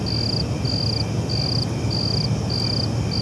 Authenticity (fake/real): real